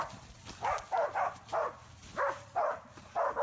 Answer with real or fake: real